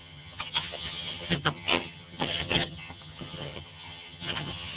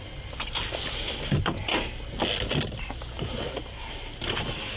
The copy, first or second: first